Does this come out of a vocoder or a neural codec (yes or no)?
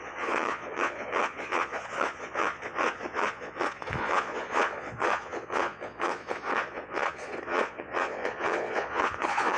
yes